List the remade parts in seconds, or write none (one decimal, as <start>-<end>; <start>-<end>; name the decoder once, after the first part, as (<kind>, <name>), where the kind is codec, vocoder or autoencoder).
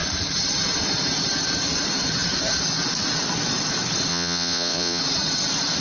4.1-5.0 (vocoder, Vocos)